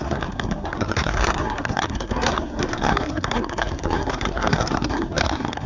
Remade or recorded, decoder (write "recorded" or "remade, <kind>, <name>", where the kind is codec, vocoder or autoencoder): remade, codec, SNAC